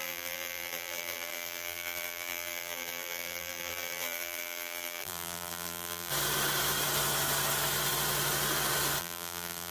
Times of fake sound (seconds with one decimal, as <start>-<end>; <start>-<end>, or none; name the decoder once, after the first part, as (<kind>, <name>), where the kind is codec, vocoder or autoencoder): 0.0-6.1 (vocoder, BigVGAN v2); 9.0-9.7